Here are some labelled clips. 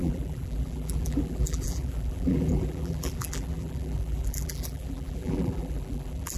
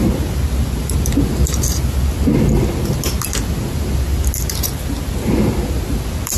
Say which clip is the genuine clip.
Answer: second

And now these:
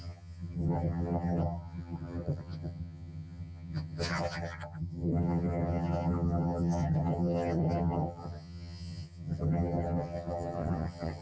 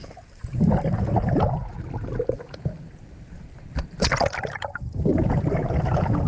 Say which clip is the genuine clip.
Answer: second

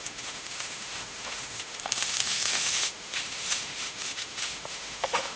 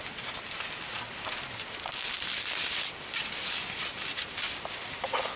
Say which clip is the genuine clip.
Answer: second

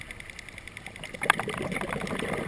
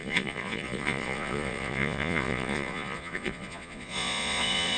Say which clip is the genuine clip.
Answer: first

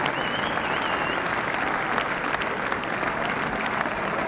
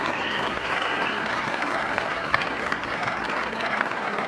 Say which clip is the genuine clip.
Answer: first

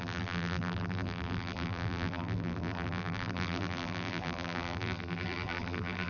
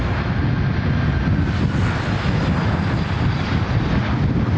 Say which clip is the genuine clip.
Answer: second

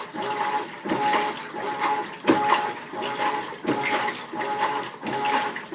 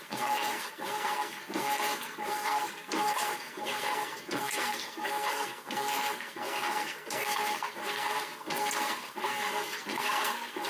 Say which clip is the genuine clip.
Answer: first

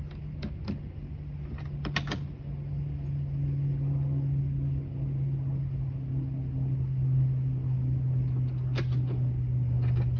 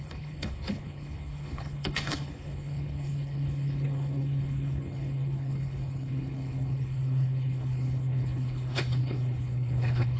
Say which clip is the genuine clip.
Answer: first